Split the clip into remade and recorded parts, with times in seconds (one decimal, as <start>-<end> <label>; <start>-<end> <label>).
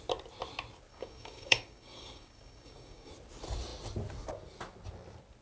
0.0-0.9 recorded; 0.9-3.1 remade; 3.1-5.4 recorded